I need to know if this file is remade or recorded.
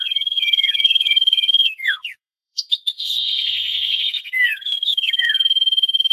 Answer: remade